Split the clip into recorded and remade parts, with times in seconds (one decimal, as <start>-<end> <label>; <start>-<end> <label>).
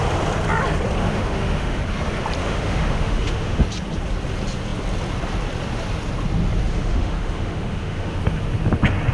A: 0.0-1.0 recorded; 1.0-1.8 remade; 1.8-2.4 recorded; 2.4-3.6 remade; 3.6-6.7 recorded; 6.7-8.2 remade; 8.2-9.1 recorded